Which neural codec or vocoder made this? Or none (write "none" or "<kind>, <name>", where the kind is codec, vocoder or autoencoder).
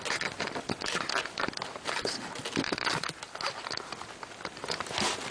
none